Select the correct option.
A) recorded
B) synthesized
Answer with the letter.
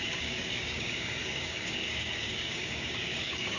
B